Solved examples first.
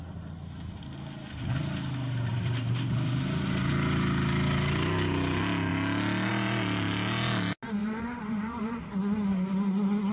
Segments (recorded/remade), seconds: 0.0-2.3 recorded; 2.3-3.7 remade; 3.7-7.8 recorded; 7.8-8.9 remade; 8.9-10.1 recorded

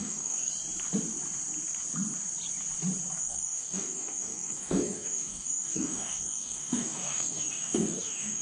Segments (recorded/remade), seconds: 0.0-0.5 remade; 0.5-3.2 recorded; 3.2-8.4 remade